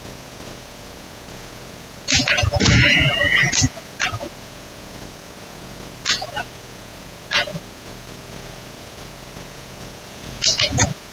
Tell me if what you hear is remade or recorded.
remade